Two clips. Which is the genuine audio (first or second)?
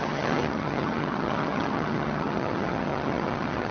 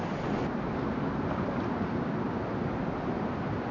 second